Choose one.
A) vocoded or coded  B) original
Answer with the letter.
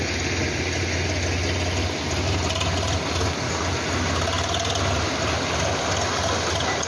B